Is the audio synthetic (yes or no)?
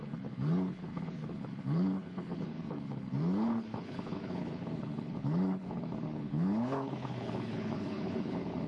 yes